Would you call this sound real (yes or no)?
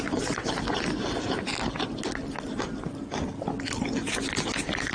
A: yes